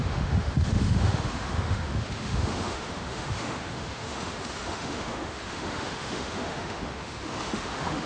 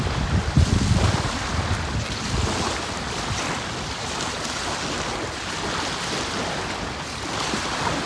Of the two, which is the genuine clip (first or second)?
second